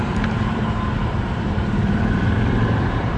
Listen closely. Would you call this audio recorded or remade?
remade